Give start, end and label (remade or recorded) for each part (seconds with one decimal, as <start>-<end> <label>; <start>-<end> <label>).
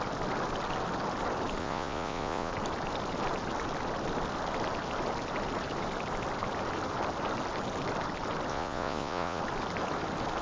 0.0-1.6 recorded; 1.6-2.5 remade; 2.5-8.5 recorded; 8.5-9.4 remade; 9.4-10.4 recorded